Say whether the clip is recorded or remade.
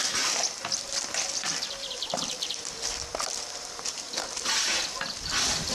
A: remade